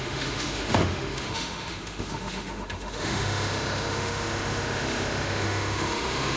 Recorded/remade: remade